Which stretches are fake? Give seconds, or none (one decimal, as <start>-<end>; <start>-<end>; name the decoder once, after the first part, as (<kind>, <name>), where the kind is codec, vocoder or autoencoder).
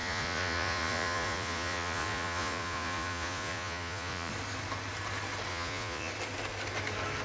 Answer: 0.0-4.3 (vocoder, Vocos); 5.5-6.1